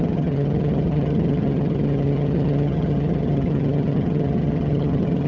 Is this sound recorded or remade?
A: remade